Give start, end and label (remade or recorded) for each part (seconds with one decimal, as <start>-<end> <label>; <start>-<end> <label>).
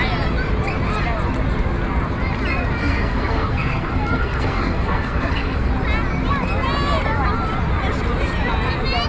0.0-2.8 recorded; 2.8-5.7 remade; 5.7-9.1 recorded